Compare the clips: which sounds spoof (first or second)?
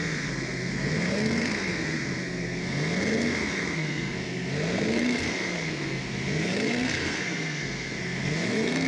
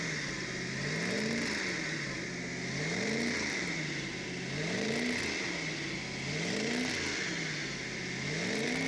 first